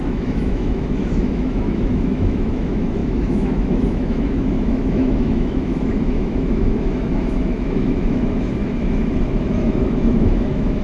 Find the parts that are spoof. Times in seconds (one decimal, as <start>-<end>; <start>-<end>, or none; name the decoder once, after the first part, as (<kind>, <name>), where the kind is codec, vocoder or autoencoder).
0.0-10.8 (autoencoder, DAC-VAE)